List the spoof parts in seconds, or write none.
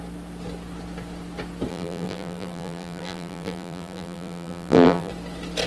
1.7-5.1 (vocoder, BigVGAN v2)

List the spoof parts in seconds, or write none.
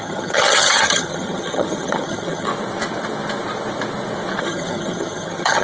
0.0-2.5 (vocoder, HiFi-GAN); 4.4-5.6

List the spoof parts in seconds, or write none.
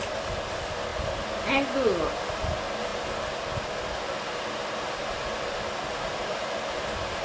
none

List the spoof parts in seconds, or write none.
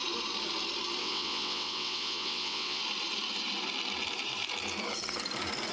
1.0-2.8 (vocoder, WaveNeXt)